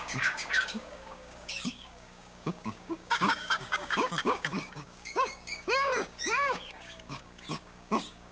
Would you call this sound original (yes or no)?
no